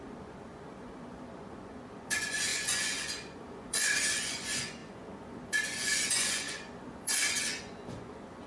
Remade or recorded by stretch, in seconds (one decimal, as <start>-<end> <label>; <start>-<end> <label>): 0.0-8.5 remade